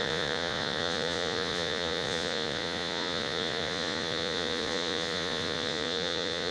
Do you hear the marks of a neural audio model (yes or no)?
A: yes